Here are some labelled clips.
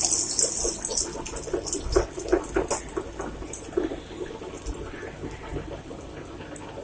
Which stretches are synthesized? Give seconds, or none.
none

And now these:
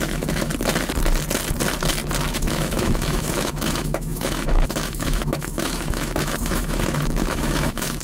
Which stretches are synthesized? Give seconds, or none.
0.0-0.5 (autoencoder, DAC-VAE); 2.2-8.0